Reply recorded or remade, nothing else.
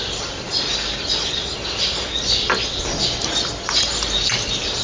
recorded